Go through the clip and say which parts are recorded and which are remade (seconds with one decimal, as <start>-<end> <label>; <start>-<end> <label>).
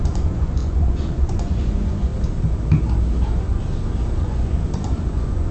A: 0.0-2.1 remade; 2.1-4.2 recorded; 4.2-5.5 remade